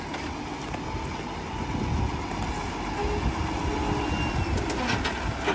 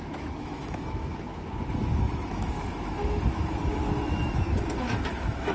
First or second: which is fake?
second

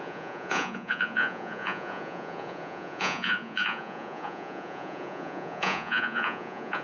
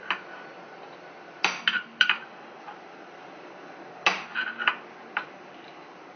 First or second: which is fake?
first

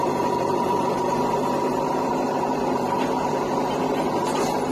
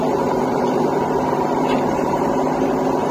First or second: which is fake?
second